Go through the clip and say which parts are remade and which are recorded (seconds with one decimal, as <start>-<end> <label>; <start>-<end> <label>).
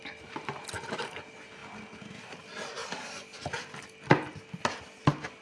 0.0-5.4 recorded